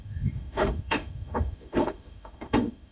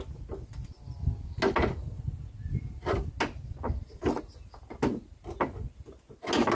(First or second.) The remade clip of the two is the first